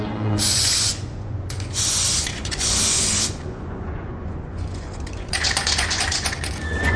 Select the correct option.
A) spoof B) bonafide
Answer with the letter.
A